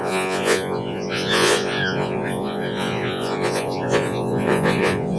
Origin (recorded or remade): remade